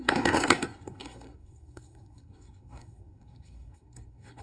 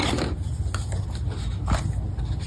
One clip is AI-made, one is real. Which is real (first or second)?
second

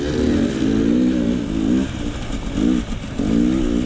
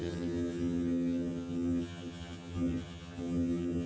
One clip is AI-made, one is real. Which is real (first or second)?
first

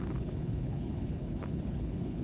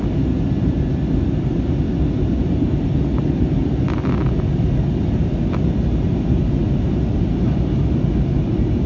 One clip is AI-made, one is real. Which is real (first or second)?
second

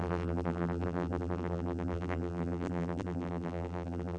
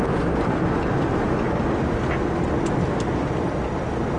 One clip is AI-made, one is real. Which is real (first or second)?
second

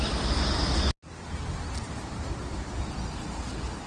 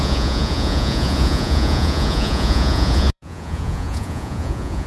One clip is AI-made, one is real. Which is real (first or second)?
first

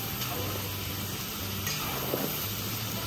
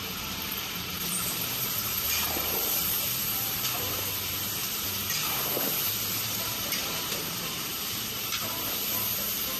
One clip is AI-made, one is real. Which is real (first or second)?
first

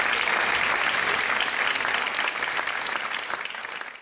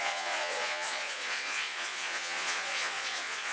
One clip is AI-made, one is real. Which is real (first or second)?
first